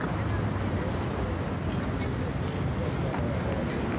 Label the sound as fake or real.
real